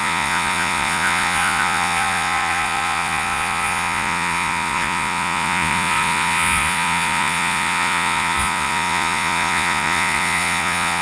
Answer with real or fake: fake